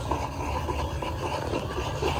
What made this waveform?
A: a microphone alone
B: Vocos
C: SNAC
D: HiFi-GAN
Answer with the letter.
A